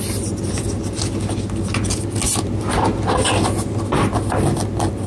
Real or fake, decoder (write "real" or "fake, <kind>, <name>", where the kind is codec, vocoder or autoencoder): real